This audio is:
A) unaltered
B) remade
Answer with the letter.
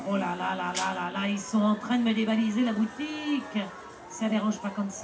A